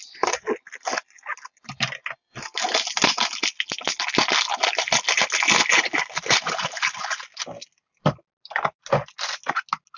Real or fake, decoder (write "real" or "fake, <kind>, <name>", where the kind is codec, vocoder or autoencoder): real